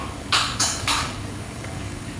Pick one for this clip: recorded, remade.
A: remade